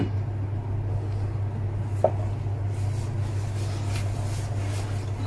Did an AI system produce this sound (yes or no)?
no